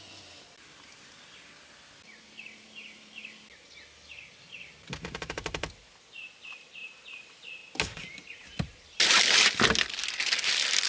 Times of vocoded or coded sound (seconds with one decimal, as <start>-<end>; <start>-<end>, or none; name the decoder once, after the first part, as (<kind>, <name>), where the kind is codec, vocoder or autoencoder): none